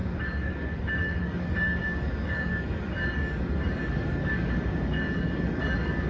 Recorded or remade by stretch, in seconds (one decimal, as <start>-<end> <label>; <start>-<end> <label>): 0.0-6.1 remade